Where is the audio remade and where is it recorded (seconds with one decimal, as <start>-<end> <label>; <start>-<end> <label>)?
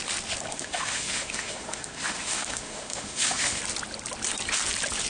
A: 0.0-0.5 recorded; 0.5-3.6 remade; 3.6-5.1 recorded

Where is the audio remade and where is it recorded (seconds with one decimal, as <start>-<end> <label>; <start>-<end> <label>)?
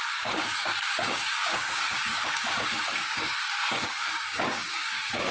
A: 0.0-5.3 remade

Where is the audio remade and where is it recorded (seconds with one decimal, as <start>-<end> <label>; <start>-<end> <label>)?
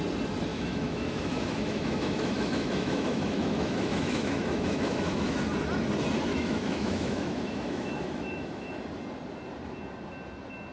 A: 0.0-0.5 recorded; 0.5-5.4 remade; 5.4-6.3 recorded; 6.3-8.7 remade; 8.7-10.7 recorded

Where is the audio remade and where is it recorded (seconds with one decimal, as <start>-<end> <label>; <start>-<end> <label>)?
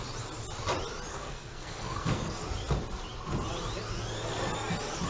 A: 0.0-1.1 recorded; 1.1-2.4 remade; 2.4-5.1 recorded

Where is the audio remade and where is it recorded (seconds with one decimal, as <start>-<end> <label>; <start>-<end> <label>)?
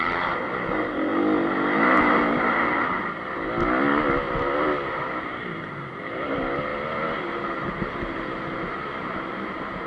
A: 0.0-1.1 remade; 1.1-2.0 recorded; 2.0-3.0 remade; 3.0-4.9 recorded; 4.9-6.7 remade; 6.7-7.7 recorded; 7.7-9.9 remade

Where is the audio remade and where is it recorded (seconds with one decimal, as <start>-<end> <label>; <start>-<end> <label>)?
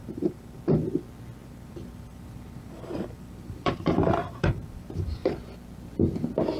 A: 0.0-0.6 remade; 0.6-1.4 recorded; 1.4-5.3 remade; 5.3-6.6 recorded